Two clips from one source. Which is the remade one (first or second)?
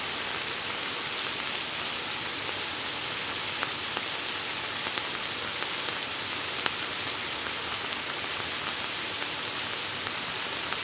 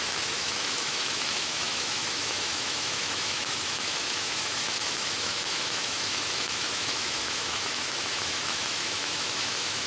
second